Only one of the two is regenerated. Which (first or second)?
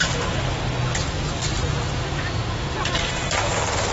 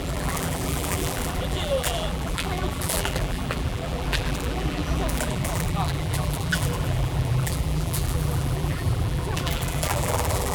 second